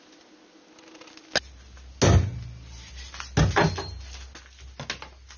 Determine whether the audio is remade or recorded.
recorded